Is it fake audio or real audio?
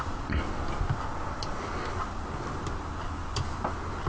real